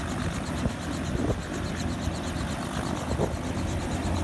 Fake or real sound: real